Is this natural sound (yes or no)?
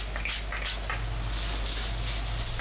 yes